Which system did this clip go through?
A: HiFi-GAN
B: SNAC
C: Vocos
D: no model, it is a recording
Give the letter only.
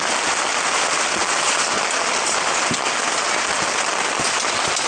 D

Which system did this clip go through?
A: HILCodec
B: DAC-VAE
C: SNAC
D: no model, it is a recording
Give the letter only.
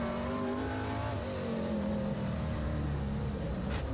D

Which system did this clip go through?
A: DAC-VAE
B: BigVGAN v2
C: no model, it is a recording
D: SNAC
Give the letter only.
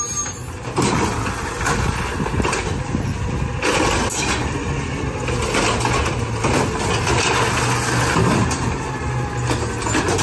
C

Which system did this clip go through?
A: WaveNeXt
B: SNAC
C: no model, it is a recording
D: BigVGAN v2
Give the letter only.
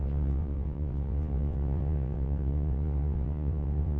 A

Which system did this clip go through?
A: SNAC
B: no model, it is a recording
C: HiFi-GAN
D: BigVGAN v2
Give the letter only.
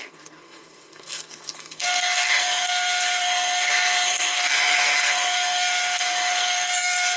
A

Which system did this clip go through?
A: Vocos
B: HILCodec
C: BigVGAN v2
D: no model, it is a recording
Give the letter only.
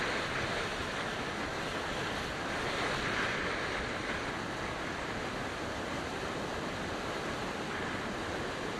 D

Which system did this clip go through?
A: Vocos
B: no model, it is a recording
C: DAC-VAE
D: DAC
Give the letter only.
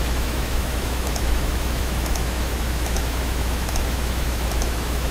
C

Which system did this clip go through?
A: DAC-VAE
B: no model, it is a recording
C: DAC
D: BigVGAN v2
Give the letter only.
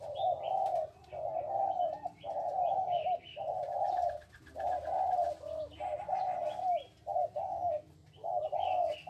B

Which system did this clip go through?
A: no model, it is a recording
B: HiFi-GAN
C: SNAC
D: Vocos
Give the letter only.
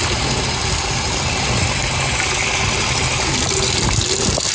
A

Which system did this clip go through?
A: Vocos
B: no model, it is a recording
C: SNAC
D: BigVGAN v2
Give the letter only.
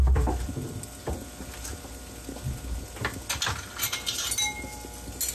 B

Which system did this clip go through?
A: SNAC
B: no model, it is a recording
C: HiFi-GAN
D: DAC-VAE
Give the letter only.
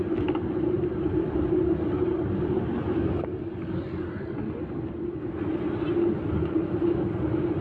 B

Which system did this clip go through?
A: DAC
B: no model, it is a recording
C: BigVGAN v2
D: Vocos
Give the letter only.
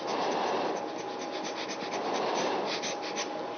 B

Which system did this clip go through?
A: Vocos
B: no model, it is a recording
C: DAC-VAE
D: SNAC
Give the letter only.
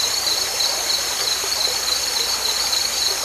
B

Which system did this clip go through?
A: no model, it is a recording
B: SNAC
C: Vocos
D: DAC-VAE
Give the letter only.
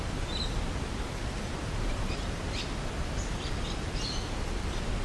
A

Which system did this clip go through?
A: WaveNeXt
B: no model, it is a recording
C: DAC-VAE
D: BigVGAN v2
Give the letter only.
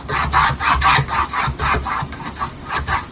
B